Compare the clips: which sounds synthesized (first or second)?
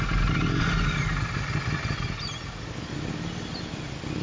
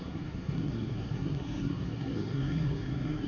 second